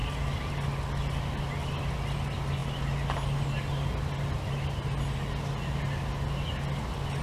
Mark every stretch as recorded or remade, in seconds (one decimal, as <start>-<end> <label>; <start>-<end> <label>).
0.0-7.2 recorded